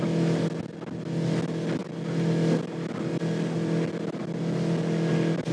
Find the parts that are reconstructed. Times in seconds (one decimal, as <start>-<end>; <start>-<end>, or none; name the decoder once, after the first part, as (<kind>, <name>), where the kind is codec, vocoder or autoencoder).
none